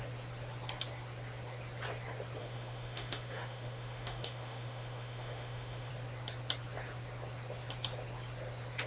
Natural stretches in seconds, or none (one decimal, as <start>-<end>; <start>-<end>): 0.0-2.4; 5.9-8.9